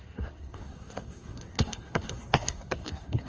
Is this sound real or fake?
fake